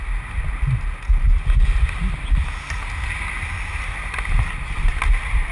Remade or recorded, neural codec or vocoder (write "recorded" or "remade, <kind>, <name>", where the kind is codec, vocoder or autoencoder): recorded